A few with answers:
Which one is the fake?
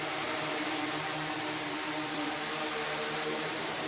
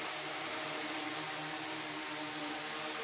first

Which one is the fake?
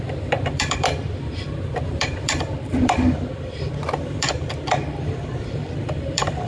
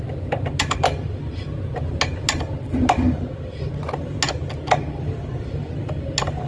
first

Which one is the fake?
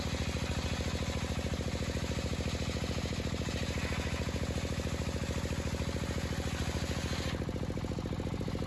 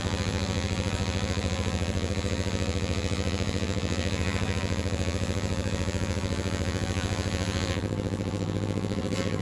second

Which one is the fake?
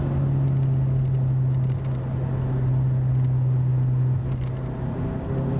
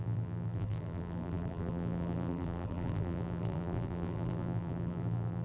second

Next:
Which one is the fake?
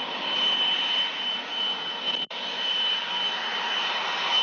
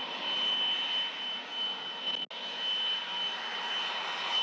first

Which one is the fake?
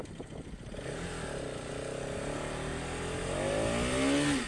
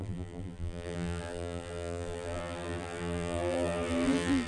second